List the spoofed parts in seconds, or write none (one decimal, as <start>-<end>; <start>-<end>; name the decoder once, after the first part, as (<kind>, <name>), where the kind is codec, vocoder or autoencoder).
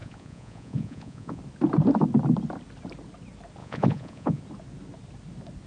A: 0.0-1.4 (vocoder, Vocos); 3.6-4.4